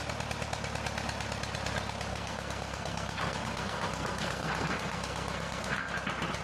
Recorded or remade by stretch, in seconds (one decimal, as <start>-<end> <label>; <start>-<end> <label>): 0.0-2.1 recorded; 2.1-5.9 remade; 5.9-6.4 recorded

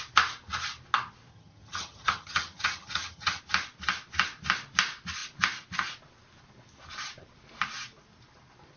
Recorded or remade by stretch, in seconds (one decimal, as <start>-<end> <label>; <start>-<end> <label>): 0.0-1.3 recorded; 1.3-3.4 remade; 3.4-8.8 recorded

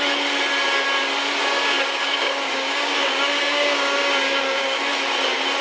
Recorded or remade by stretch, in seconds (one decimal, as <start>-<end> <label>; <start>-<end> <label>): 0.0-1.4 recorded; 1.4-4.8 remade; 4.8-5.6 recorded

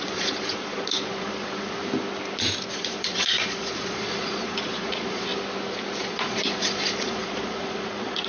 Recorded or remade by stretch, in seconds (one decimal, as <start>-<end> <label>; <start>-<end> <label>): 0.0-1.8 remade; 1.8-2.7 recorded; 2.7-5.3 remade; 5.3-6.0 recorded; 6.0-8.3 remade

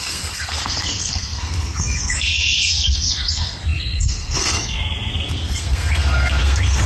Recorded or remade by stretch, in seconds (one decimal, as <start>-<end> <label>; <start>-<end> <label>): 0.0-6.9 remade

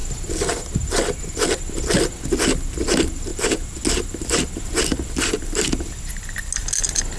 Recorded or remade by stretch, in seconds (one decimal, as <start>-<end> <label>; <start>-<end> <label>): 0.0-7.2 recorded

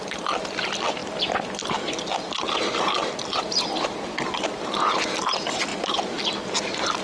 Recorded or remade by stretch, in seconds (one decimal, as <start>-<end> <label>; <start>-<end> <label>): 0.0-7.0 recorded